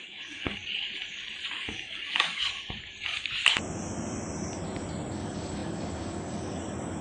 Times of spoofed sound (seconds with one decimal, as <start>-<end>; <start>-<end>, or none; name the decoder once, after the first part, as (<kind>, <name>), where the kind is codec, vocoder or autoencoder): 0.0-0.6 (codec, DAC); 1.5-2.4; 5.1-7.0